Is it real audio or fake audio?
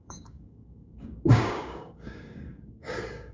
fake